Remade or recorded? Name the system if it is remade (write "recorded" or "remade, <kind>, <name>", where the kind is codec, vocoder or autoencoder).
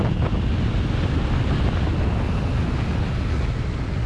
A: recorded